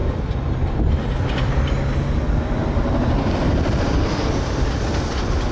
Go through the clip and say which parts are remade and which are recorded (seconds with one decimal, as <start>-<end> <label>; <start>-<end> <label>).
0.0-1.1 remade; 1.1-2.6 recorded; 2.6-4.4 remade; 4.4-5.5 recorded